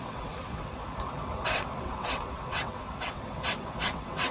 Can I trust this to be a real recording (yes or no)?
no